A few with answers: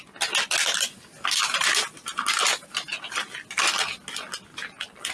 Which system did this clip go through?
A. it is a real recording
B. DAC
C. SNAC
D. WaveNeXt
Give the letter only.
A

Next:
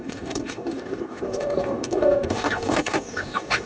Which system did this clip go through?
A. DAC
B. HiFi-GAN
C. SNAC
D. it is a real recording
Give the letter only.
A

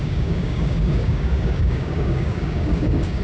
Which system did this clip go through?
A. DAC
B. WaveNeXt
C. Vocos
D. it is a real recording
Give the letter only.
A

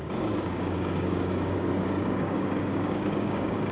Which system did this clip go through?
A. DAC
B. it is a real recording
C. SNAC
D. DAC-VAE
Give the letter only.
A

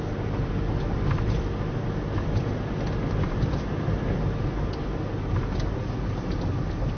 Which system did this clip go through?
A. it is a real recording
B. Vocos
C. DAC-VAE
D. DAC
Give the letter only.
A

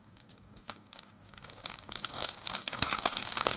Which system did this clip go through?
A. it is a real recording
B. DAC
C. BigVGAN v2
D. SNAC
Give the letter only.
B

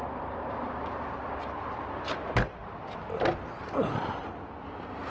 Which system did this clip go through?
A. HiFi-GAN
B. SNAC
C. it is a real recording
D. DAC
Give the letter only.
C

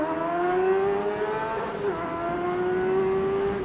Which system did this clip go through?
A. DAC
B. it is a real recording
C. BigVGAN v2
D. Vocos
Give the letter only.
B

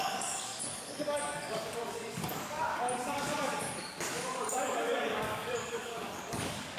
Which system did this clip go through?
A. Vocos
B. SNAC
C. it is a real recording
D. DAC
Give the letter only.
D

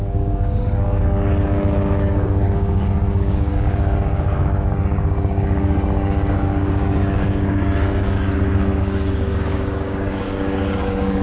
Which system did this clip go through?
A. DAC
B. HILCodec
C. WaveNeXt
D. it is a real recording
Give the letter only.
A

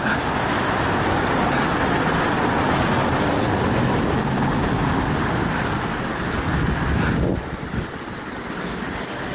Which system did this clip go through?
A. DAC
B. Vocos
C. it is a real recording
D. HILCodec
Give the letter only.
C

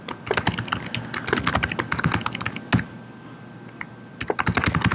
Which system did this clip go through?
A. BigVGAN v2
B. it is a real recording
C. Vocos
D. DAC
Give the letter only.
B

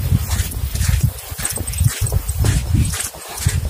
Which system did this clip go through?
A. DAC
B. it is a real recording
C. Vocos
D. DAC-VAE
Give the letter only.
B